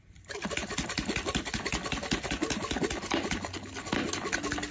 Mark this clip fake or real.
real